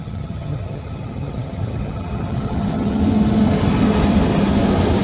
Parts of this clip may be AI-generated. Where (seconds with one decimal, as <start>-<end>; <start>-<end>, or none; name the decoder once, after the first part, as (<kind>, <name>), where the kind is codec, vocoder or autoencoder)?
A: 0.0-3.0 (vocoder, HiFi-GAN)